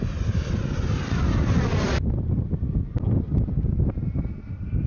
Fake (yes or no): no